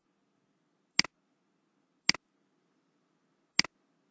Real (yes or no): yes